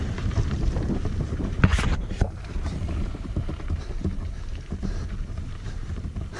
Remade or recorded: remade